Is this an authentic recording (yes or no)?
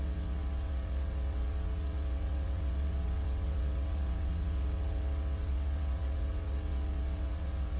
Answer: no